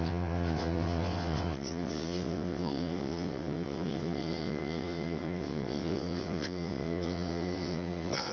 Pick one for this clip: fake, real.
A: fake